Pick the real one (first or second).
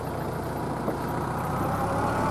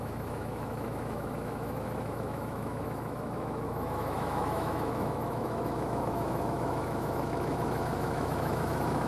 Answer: first